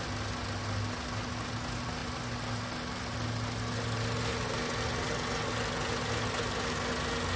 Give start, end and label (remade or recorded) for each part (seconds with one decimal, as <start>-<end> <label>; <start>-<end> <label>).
0.0-7.4 recorded